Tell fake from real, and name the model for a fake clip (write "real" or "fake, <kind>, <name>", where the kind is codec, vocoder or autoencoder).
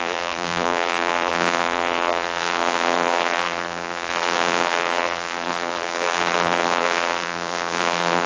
fake, vocoder, BigVGAN v2